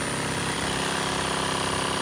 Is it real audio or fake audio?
real